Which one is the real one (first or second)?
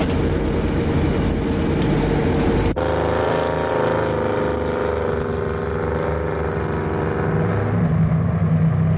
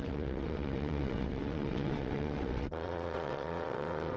first